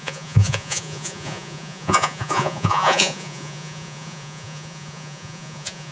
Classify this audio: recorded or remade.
remade